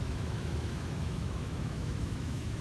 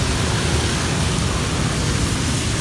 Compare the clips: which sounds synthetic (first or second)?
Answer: first